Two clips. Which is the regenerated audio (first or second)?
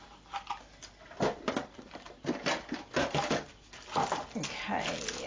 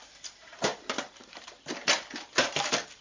second